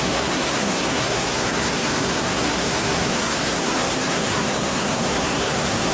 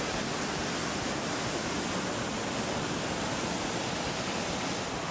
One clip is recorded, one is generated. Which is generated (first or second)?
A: first